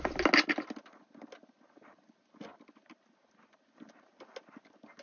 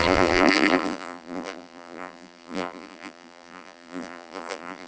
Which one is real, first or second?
first